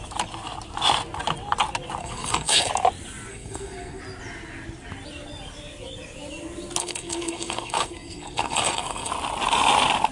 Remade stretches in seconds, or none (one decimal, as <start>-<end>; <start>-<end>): 2.0-2.7; 3.3-4.0; 6.8-9.1